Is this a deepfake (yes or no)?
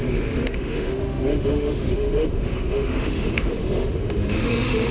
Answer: yes